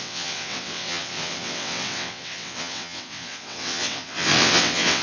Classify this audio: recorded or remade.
remade